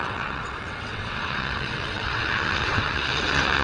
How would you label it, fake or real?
fake